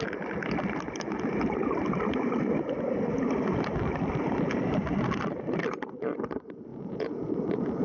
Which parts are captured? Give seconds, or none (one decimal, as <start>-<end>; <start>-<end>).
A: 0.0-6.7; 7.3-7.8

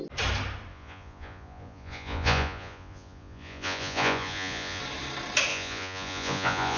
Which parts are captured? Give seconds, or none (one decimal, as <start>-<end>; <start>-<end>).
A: 0.0-0.7; 4.8-5.5

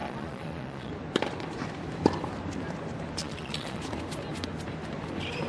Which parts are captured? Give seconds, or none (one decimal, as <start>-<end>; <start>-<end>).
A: 0.9-3.2; 3.8-5.5

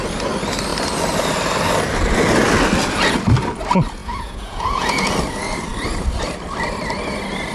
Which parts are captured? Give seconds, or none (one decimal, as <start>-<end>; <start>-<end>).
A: 0.0-4.0; 5.1-7.5